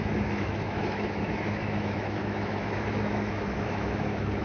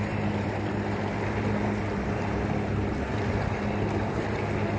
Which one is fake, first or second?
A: first